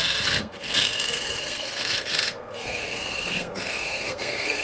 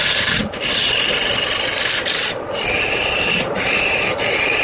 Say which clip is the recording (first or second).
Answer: second